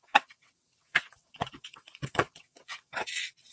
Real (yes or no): no